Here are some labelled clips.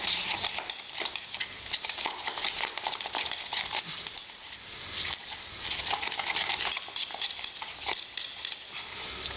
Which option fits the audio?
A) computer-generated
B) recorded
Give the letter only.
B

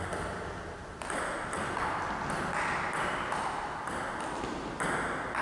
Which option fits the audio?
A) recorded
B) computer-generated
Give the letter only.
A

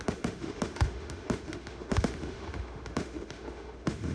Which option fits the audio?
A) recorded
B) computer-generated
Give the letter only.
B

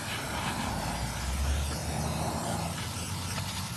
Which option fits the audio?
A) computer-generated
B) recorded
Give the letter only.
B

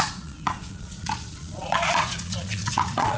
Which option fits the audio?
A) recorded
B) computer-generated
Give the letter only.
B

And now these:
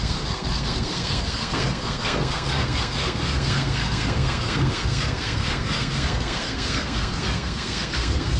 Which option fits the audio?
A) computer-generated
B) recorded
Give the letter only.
A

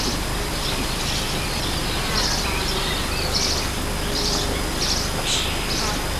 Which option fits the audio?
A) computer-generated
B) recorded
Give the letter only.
A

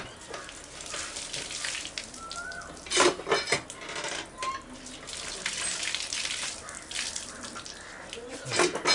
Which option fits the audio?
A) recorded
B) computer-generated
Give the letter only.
A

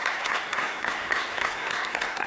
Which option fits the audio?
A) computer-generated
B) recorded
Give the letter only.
A